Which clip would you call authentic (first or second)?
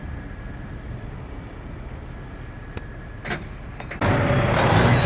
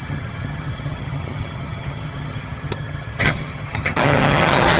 first